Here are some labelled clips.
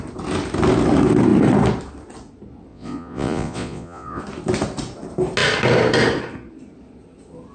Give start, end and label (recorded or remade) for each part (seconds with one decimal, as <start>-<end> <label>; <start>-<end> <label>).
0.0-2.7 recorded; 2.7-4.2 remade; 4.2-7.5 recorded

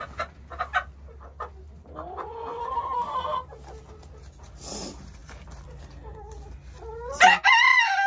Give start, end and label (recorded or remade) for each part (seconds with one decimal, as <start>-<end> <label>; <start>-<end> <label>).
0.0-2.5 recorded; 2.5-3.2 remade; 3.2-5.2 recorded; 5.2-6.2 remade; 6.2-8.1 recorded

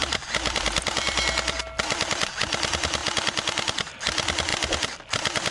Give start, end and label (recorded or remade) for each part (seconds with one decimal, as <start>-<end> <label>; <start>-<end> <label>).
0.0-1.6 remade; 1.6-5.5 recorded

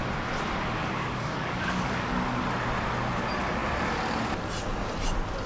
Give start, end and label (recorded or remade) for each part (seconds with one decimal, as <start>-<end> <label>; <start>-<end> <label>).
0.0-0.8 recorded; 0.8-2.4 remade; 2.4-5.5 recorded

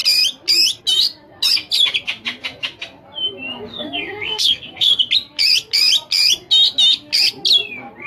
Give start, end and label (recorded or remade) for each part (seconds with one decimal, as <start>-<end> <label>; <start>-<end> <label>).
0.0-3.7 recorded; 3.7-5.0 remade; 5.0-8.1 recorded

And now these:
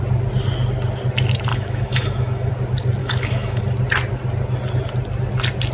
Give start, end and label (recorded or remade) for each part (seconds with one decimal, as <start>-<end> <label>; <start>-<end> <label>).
0.0-1.5 recorded; 1.5-2.5 remade; 2.5-3.0 recorded; 3.0-3.6 remade; 3.6-5.7 recorded

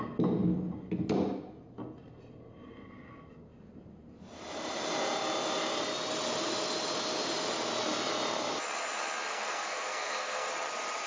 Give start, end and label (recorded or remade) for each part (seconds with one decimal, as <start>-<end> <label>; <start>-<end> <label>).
0.0-9.3 recorded; 9.3-10.5 remade; 10.5-11.1 recorded